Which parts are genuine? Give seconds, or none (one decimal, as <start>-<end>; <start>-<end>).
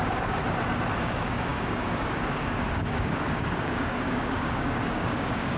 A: 0.4-1.0